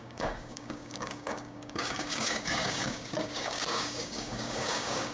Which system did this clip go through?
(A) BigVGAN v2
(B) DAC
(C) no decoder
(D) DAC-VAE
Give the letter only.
B